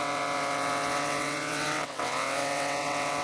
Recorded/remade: remade